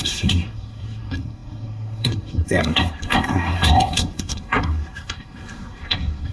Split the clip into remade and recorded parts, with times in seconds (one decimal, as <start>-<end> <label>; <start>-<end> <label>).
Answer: 0.0-6.3 remade